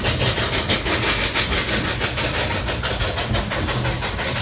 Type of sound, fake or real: real